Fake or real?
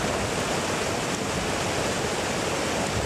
real